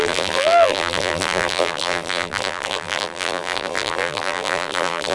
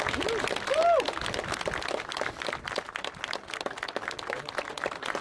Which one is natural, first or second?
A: second